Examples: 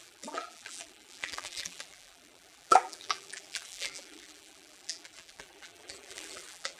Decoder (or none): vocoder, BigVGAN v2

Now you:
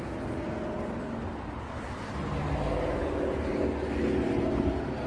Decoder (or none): none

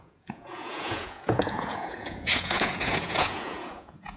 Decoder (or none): vocoder, Vocos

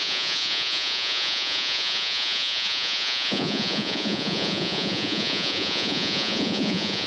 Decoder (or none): vocoder, Vocos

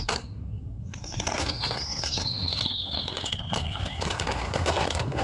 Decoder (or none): codec, SNAC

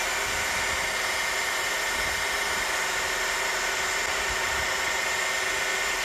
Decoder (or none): none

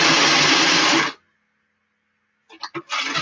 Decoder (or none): none